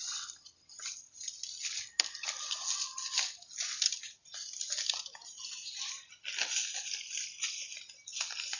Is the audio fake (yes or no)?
no